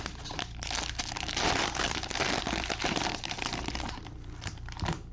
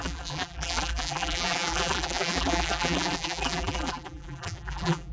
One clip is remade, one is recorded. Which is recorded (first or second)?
first